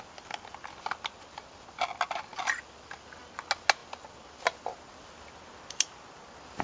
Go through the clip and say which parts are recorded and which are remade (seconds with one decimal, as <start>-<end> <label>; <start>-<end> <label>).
0.0-6.6 recorded